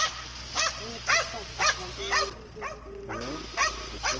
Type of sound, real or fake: real